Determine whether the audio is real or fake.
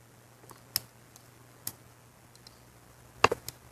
real